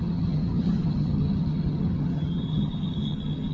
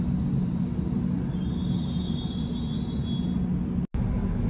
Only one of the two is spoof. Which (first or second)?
first